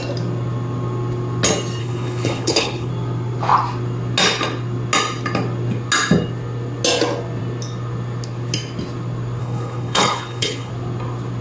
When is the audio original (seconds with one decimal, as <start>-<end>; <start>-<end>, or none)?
0.0-1.8; 2.9-9.4; 10.7-11.4